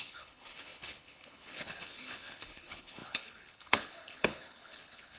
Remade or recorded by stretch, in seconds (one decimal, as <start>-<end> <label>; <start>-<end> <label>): 0.0-5.2 remade